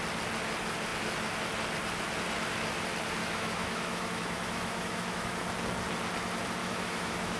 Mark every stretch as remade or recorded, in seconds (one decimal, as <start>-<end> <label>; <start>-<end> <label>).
0.0-3.2 recorded; 3.2-5.3 remade; 5.3-6.6 recorded; 6.6-7.4 remade

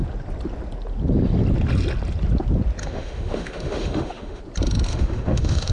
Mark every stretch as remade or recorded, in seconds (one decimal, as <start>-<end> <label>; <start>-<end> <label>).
0.0-2.8 recorded; 2.8-4.4 remade; 4.4-4.9 recorded; 4.9-5.7 remade